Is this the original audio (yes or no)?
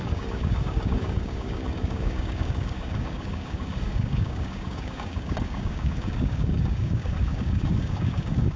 no